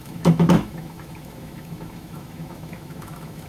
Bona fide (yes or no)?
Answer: no